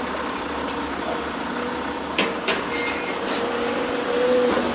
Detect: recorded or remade recorded